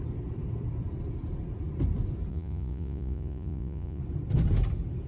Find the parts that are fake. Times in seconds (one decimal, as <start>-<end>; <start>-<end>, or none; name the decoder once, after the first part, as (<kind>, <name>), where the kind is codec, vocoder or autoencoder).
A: 2.3-4.0 (vocoder, Vocos)